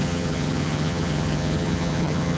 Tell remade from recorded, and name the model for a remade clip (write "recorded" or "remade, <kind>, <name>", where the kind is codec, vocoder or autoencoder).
remade, vocoder, HiFi-GAN